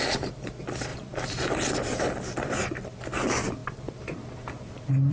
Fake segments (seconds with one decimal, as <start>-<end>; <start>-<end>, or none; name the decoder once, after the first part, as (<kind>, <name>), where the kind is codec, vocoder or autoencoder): 0.9-2.0 (vocoder, BigVGAN v2); 3.6-5.1